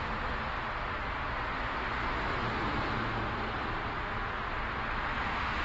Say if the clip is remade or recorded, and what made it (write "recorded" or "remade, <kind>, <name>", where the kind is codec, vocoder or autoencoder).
recorded